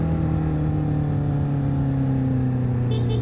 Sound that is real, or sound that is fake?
real